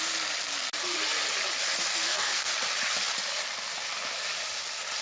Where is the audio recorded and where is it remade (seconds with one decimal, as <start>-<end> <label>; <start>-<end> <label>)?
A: 0.0-1.9 recorded; 1.9-2.5 remade; 2.5-5.0 recorded

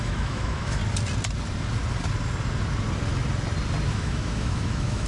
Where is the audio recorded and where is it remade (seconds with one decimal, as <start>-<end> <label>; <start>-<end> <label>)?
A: 0.0-0.8 remade; 0.8-3.9 recorded; 3.9-5.1 remade